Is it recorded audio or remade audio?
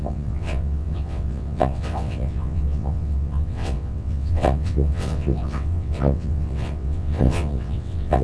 remade